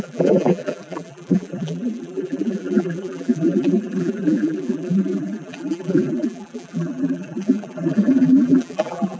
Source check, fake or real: fake